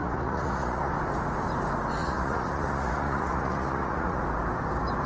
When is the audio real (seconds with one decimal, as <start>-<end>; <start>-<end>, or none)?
0.9-2.0; 4.2-5.1